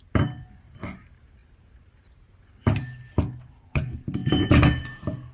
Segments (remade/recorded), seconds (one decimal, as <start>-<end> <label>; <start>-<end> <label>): 0.0-5.3 recorded